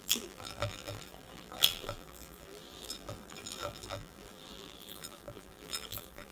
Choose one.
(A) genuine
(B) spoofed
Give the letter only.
B